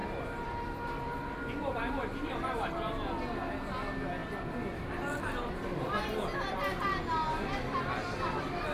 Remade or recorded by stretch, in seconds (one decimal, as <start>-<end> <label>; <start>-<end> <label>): 0.0-2.7 remade; 2.7-4.2 recorded; 4.2-6.2 remade; 6.2-8.7 recorded